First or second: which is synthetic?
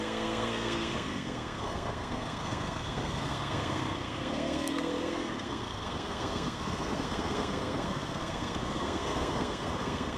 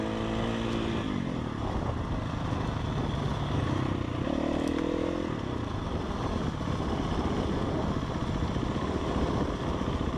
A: first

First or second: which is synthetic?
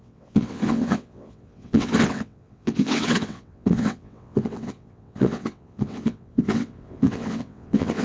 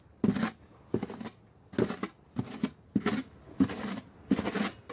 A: first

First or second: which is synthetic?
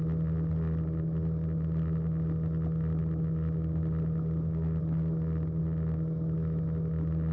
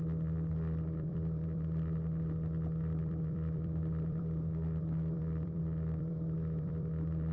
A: second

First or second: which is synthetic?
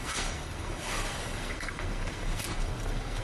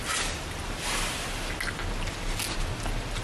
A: first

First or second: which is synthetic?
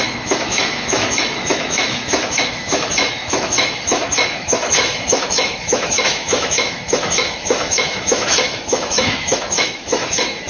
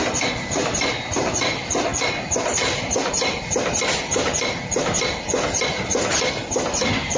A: first